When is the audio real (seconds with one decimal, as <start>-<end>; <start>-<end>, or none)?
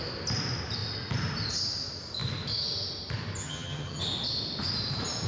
0.0-3.4; 4.0-5.3